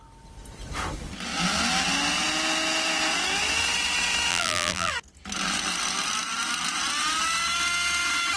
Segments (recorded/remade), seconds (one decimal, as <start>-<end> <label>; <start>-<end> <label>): 0.0-4.3 recorded; 4.3-4.9 remade; 4.9-8.4 recorded